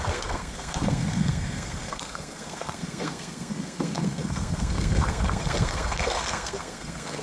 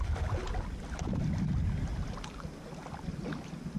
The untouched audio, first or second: second